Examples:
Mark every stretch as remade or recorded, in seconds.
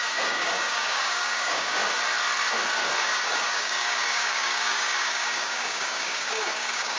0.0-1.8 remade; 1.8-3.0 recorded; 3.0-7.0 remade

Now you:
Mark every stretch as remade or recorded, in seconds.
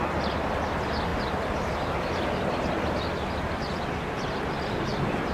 0.0-5.3 recorded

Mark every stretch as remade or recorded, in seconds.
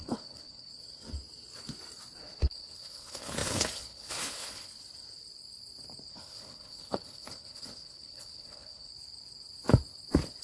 0.0-0.7 remade; 0.7-2.2 recorded; 2.2-4.7 remade; 4.7-6.1 recorded; 6.1-8.9 remade; 8.9-10.4 recorded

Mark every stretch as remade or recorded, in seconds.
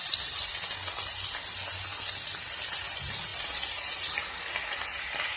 0.0-5.4 recorded